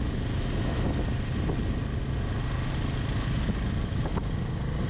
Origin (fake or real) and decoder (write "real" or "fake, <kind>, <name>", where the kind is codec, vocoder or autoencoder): real